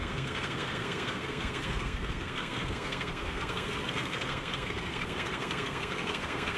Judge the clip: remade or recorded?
remade